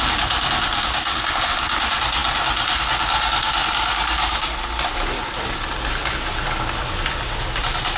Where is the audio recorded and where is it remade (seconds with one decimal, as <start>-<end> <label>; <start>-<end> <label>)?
0.0-8.0 recorded